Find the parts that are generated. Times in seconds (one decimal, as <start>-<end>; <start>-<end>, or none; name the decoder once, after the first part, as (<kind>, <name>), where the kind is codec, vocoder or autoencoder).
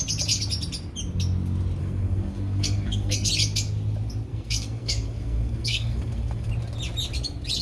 1.8-3.3 (codec, SNAC); 4.3-6.5